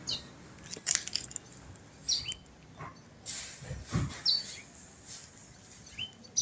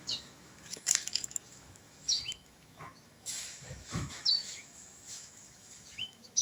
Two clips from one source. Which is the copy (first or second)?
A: second